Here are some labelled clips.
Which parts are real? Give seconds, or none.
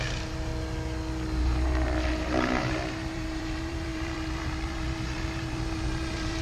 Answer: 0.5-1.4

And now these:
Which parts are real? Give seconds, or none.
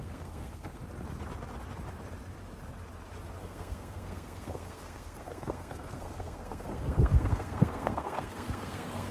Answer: 0.8-3.4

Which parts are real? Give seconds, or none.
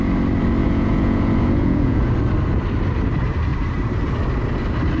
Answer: 0.0-0.6; 2.0-5.0